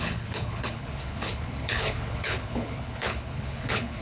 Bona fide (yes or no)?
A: no